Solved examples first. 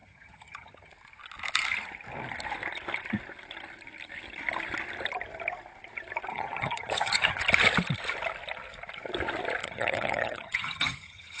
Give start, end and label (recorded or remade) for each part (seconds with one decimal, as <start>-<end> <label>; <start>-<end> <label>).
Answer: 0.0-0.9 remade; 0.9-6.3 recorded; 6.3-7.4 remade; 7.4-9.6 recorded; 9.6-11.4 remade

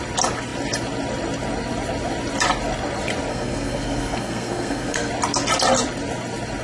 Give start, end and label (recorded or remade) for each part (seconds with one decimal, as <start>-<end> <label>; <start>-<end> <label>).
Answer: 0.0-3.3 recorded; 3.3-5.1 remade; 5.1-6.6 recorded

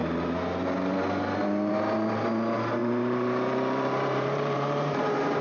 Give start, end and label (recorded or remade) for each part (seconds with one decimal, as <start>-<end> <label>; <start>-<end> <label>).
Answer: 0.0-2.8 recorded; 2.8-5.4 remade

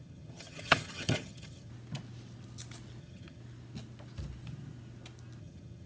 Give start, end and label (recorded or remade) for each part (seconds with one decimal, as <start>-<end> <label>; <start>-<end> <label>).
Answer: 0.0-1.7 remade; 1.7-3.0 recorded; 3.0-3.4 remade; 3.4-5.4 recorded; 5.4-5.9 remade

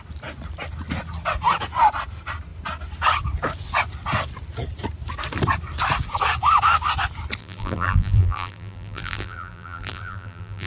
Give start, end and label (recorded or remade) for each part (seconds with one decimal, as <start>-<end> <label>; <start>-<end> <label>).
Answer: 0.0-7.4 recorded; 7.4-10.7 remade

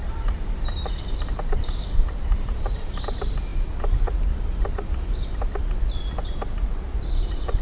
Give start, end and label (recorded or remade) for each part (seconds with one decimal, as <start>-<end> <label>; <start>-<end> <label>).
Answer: 0.0-2.9 remade; 2.9-7.6 recorded

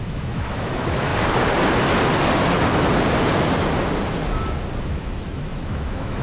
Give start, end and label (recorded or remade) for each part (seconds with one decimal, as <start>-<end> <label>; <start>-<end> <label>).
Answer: 0.0-1.1 remade; 1.1-4.8 recorded; 4.8-6.2 remade